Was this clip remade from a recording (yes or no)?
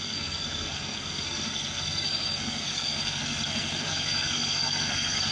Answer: yes